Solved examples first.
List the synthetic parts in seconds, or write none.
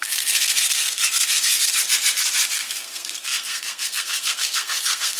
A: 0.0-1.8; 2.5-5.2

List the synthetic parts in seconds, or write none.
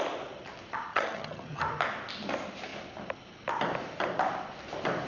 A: 0.9-1.6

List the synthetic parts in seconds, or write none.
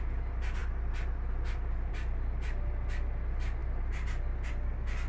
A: none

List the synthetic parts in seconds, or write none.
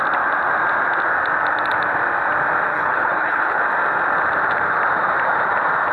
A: 2.7-3.6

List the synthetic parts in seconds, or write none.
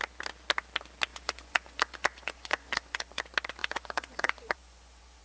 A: 1.1-3.2; 3.6-5.2